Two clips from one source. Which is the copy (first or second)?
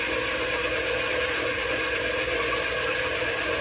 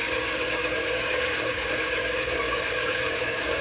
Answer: second